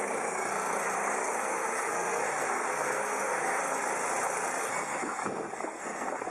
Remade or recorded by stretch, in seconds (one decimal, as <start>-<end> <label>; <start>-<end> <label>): 0.0-3.8 remade; 3.8-4.6 recorded; 4.6-6.3 remade